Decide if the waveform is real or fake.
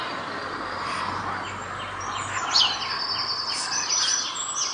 real